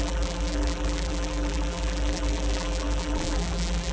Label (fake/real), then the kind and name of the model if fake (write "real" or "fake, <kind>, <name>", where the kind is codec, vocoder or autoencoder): fake, vocoder, BigVGAN v2